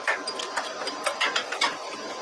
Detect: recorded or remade recorded